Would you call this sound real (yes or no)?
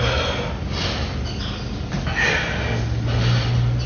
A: yes